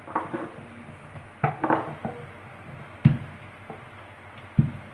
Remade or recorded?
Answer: recorded